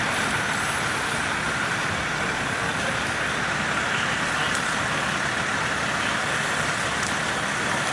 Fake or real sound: real